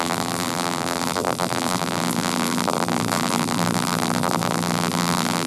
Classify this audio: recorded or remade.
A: remade